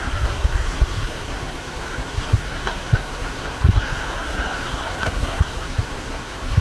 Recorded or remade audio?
remade